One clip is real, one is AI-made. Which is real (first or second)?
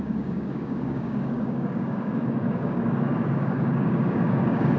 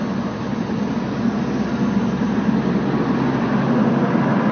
second